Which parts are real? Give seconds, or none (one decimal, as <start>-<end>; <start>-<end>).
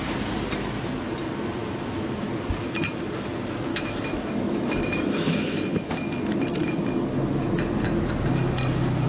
0.0-1.6; 2.3-3.7; 5.9-9.1